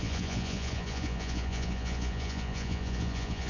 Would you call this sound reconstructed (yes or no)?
yes